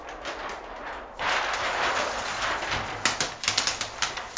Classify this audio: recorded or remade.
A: recorded